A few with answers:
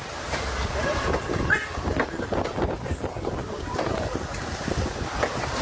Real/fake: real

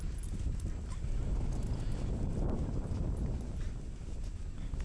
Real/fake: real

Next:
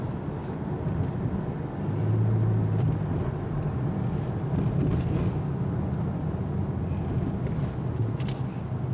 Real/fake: real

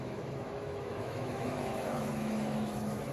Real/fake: fake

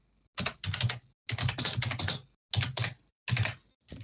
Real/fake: real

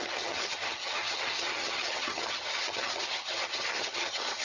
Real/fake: fake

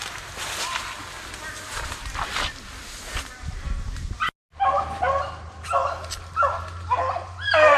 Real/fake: real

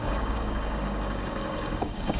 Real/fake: fake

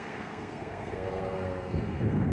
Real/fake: fake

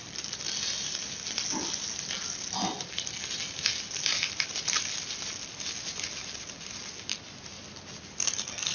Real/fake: real